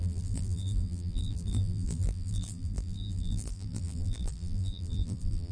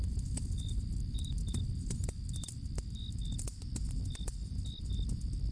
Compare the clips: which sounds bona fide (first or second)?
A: second